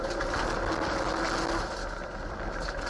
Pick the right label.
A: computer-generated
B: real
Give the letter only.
B